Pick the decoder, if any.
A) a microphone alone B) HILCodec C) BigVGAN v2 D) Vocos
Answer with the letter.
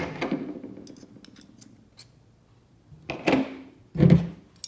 A